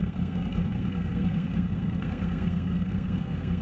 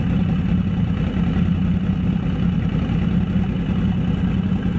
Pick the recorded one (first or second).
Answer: second